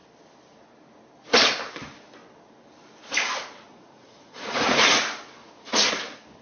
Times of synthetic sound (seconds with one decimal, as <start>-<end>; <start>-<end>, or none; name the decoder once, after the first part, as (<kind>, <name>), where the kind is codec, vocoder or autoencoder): 3.7-5.0 (vocoder, Vocos); 5.4-5.9

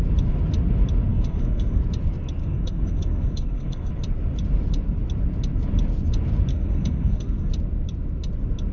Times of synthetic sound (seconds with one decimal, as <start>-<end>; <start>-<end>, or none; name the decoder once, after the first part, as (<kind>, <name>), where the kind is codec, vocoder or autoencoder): 1.1-1.8 (codec, SNAC); 2.4-3.9; 6.5-7.5

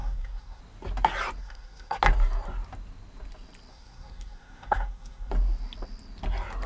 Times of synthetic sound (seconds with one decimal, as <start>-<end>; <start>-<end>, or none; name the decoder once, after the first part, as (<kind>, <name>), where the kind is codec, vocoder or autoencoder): 0.0-0.6 (codec, SNAC); 1.4-2.0; 3.7-5.3

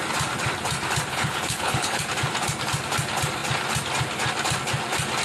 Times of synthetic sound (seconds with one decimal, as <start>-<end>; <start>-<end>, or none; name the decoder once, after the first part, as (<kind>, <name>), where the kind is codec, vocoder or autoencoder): 1.1-2.0 (codec, HILCodec)

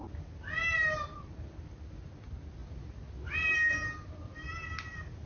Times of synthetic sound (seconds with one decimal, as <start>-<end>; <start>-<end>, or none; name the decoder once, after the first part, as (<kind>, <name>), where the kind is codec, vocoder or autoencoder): none

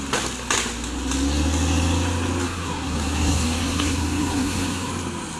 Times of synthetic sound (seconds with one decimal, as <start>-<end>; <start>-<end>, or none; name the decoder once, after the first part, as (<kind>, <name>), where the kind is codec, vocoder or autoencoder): 2.4-4.9 (codec, SNAC)

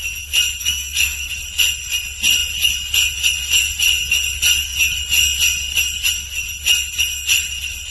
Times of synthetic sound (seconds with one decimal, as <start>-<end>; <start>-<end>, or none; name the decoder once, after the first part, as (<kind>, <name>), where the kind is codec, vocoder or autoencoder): 0.6-1.3 (codec, SNAC)